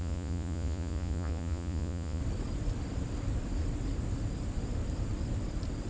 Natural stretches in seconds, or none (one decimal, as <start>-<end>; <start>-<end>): 2.2-5.9